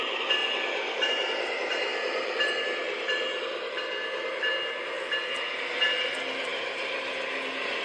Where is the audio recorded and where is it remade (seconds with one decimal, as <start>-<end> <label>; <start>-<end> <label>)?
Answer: 0.0-0.4 recorded; 0.4-3.8 remade; 3.8-7.8 recorded